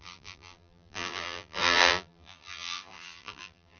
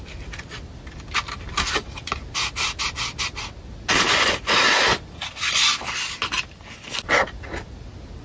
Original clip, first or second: second